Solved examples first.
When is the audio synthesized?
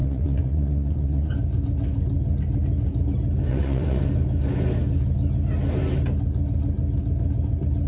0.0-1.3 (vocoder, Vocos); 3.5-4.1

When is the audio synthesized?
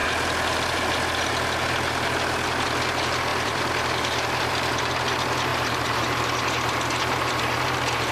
3.3-4.9 (vocoder, BigVGAN v2); 5.5-8.1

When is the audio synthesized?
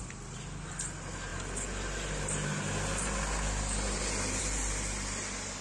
none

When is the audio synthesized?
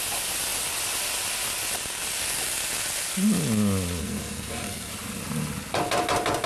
4.0-4.9 (codec, SNAC)